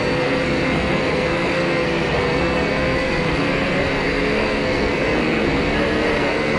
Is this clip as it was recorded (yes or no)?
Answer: no